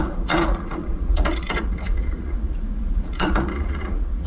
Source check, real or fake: fake